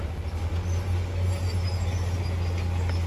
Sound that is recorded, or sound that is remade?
recorded